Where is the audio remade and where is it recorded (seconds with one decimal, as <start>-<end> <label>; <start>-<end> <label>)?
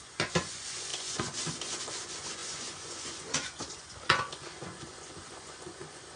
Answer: 0.0-6.2 remade